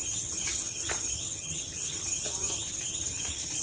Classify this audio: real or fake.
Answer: fake